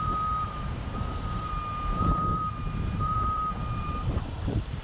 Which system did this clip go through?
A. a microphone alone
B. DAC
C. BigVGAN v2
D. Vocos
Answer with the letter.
C